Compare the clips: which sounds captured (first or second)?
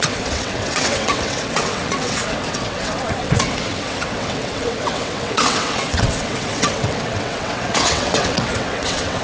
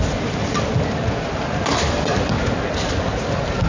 second